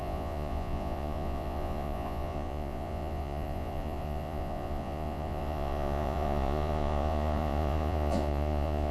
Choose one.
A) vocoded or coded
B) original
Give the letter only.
A